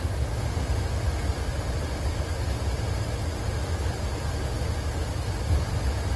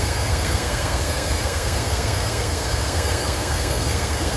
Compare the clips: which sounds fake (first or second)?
second